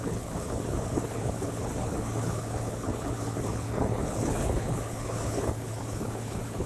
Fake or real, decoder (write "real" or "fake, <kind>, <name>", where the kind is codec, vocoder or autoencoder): fake, codec, HILCodec